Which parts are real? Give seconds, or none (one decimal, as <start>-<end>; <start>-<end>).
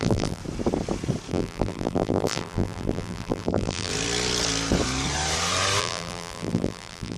0.4-1.3; 3.9-5.8